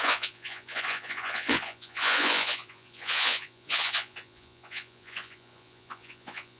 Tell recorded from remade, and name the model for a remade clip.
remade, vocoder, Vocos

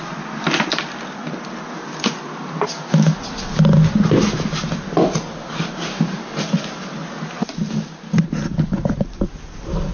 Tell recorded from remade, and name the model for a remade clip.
recorded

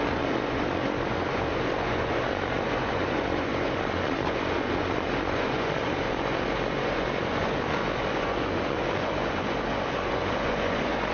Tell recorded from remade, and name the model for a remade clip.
remade, vocoder, Vocos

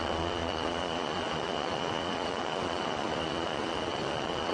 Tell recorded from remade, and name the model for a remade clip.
remade, vocoder, Vocos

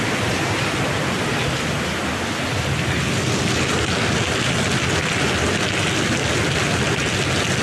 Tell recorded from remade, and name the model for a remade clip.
recorded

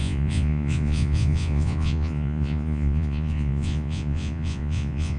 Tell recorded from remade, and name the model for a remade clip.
remade, vocoder, Vocos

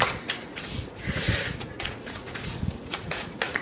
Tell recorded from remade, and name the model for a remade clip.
remade, vocoder, Vocos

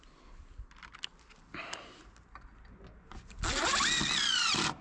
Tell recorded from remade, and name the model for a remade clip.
recorded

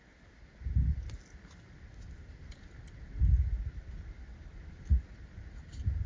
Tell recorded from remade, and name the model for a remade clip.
recorded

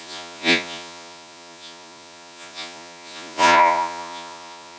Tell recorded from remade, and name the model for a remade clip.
remade, vocoder, Vocos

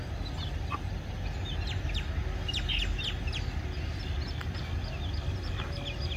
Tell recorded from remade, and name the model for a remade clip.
recorded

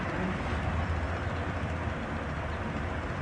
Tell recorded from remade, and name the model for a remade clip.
recorded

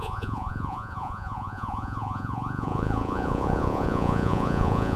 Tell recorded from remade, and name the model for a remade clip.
remade, vocoder, Vocos